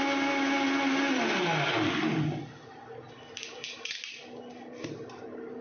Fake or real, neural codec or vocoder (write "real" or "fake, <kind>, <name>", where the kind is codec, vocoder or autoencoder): real